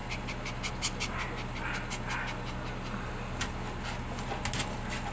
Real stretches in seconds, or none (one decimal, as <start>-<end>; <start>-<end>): 0.0-5.1